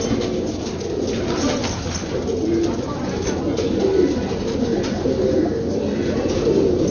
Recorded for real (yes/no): yes